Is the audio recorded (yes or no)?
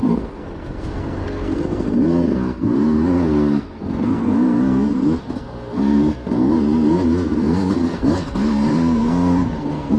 no